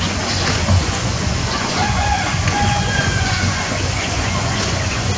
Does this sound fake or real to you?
fake